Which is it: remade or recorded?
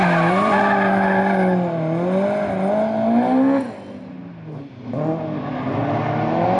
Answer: recorded